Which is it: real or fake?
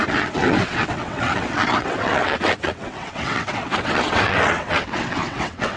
fake